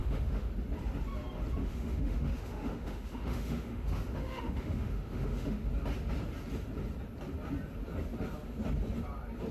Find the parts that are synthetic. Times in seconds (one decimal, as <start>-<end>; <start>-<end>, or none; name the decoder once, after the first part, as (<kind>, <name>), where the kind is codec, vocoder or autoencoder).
0.0-0.5 (autoencoder, DAC-VAE); 1.6-5.7